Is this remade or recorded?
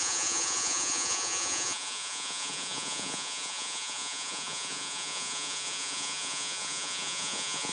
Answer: remade